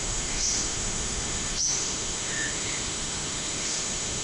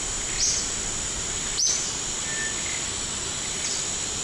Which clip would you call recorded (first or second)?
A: second